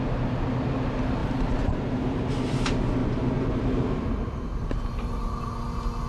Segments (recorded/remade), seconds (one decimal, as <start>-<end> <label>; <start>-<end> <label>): 0.0-3.0 recorded; 3.0-3.5 remade; 3.5-6.1 recorded